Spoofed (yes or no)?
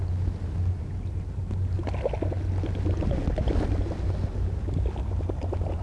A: no